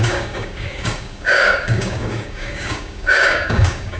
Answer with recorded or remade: remade